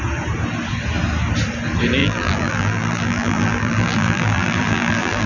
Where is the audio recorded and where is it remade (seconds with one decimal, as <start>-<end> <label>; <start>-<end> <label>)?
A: 0.0-2.0 recorded; 2.0-5.3 remade